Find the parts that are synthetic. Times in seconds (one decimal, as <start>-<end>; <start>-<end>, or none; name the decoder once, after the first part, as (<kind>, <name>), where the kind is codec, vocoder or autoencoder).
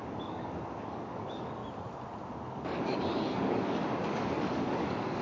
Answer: 0.0-1.6 (codec, DAC); 2.3-5.2